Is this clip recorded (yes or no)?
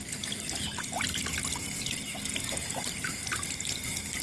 yes